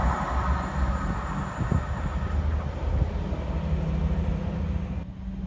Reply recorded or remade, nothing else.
recorded